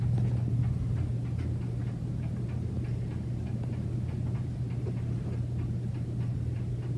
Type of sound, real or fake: real